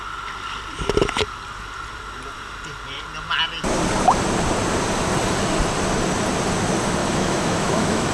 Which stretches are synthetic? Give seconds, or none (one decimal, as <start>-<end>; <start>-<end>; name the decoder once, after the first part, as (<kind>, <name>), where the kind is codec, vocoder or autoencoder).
7.0-8.1 (autoencoder, DAC-VAE)